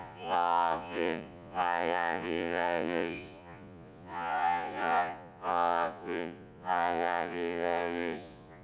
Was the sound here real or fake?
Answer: fake